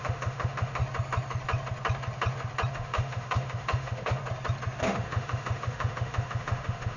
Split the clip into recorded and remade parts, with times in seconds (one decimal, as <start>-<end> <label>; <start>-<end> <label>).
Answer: 0.0-0.8 remade; 0.8-2.7 recorded; 2.7-4.2 remade; 4.2-4.8 recorded; 4.8-7.0 remade